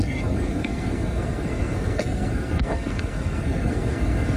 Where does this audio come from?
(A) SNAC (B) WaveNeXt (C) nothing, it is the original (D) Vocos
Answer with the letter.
A